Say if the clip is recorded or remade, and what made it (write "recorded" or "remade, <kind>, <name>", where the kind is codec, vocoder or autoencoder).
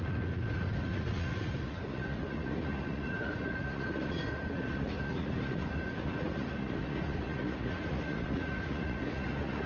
remade, vocoder, Vocos